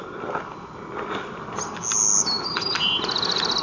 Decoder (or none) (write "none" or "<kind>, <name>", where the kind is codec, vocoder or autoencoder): none